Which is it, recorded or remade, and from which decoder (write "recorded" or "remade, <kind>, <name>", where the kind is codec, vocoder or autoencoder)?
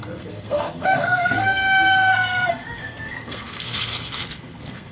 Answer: remade, codec, SNAC